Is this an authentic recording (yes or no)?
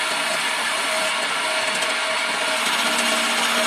yes